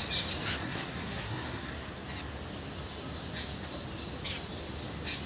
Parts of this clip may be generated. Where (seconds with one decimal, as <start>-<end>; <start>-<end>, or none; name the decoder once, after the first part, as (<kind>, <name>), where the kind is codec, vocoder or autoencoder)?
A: 0.6-1.7 (codec, SNAC)